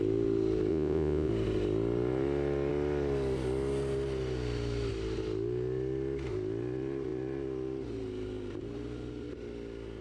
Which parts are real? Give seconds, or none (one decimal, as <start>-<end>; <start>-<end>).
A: 0.0-0.7; 1.3-10.0